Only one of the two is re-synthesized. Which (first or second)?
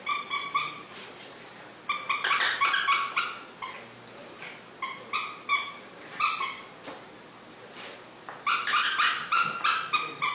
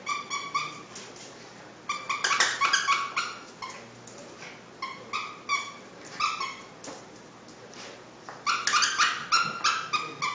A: first